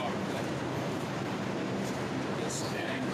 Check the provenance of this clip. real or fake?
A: fake